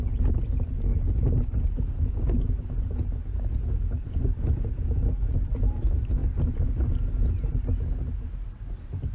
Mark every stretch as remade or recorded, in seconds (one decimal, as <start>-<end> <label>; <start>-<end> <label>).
0.0-0.9 recorded; 0.9-5.2 remade; 5.2-9.1 recorded